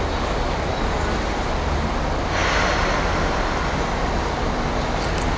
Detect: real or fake real